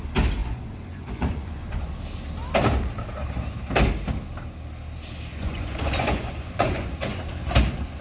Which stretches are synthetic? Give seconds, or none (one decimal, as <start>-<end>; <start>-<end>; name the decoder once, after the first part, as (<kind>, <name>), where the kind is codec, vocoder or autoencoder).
0.4-1.9 (vocoder, Vocos); 5.3-7.2